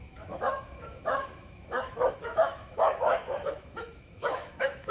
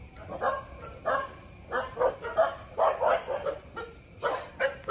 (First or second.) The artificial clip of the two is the first